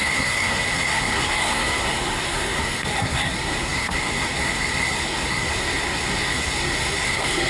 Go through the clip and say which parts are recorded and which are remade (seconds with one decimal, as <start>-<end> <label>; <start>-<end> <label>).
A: 0.0-7.5 remade